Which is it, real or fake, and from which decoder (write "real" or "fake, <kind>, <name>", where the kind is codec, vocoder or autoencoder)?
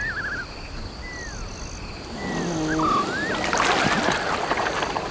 real